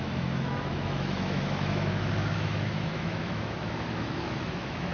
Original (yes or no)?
no